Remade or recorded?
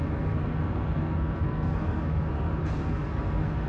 remade